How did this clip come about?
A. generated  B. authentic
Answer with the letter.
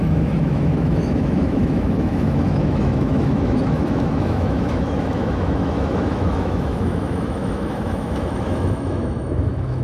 A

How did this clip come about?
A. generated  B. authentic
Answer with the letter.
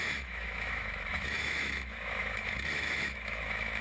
A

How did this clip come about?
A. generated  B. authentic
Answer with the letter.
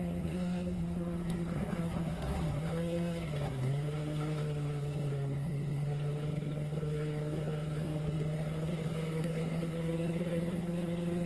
A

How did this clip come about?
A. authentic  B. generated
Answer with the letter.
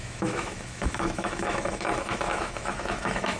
B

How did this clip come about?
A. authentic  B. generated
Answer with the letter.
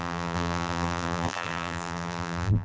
B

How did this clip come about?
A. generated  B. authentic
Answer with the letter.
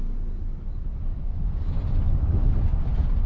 B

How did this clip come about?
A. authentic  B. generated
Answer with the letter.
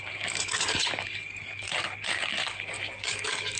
B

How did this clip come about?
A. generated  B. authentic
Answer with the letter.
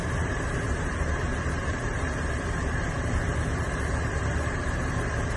A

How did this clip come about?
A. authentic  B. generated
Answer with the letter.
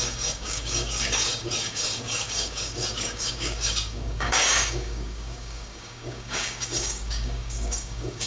B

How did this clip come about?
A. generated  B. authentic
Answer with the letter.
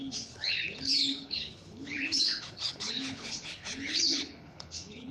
A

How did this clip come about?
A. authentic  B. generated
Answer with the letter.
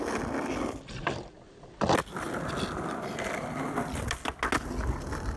A